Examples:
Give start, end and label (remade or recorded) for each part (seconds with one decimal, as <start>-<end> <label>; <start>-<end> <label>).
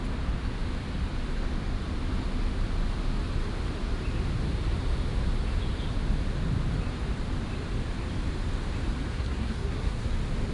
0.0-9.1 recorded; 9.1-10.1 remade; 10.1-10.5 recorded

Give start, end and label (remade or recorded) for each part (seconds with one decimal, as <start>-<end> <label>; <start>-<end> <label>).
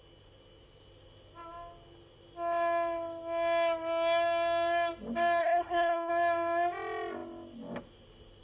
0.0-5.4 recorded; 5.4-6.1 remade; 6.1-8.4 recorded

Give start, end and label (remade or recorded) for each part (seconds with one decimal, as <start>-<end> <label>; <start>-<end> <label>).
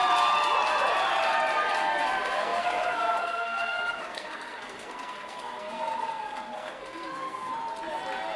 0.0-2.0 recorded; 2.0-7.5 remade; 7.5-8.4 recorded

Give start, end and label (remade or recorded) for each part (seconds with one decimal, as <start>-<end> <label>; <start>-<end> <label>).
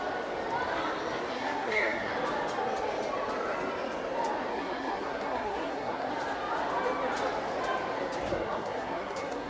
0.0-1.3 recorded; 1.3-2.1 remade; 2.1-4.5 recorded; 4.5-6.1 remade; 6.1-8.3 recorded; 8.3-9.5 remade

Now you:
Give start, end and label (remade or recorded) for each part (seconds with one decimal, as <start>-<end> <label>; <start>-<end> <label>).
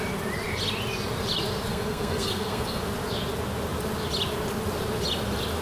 0.0-1.7 recorded; 1.7-2.8 remade; 2.8-5.6 recorded